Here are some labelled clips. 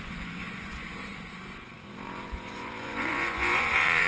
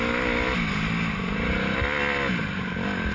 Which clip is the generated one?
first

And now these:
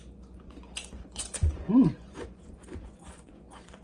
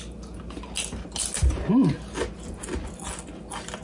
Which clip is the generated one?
first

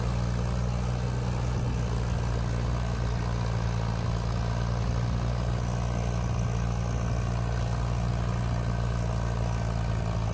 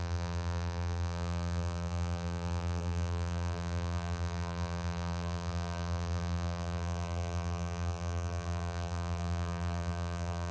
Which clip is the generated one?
second